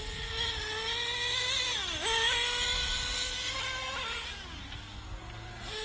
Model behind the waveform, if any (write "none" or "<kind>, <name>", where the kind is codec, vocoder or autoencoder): none